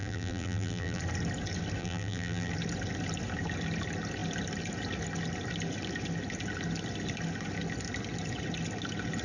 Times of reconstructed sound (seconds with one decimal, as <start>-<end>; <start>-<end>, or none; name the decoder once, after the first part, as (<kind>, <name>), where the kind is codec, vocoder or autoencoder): 0.0-1.0 (vocoder, BigVGAN v2); 1.8-2.5